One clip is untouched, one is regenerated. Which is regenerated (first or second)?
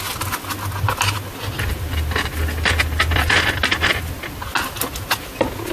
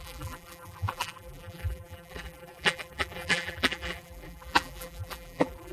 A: second